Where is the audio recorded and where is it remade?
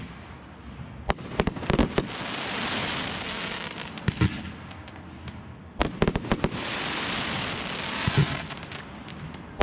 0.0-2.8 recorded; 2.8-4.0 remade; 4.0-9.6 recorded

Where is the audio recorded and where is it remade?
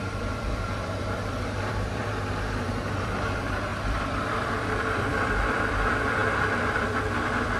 0.0-7.6 remade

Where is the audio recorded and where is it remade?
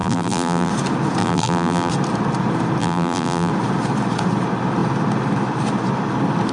0.0-0.7 remade; 0.7-1.2 recorded; 1.2-1.9 remade; 1.9-2.8 recorded; 2.8-3.5 remade; 3.5-6.5 recorded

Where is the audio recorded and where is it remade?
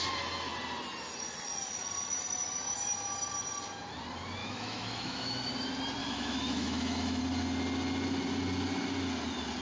0.0-4.4 recorded; 4.4-5.5 remade; 5.5-6.0 recorded; 6.0-7.2 remade; 7.2-9.6 recorded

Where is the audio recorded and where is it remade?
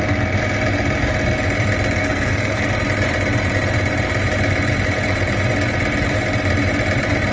0.0-2.0 recorded; 2.0-2.7 remade; 2.7-7.3 recorded